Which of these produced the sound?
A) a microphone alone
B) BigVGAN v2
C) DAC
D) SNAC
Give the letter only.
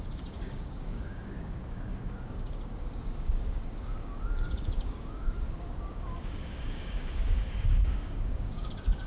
C